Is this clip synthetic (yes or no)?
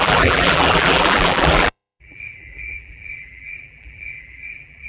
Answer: yes